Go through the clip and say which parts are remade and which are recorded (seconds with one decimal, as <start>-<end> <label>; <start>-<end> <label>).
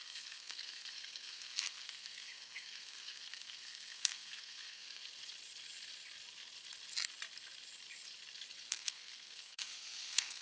0.0-5.0 remade; 5.0-8.7 recorded; 8.7-10.4 remade